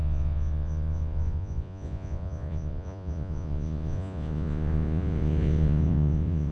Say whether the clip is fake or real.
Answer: fake